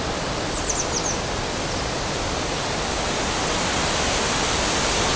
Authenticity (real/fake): real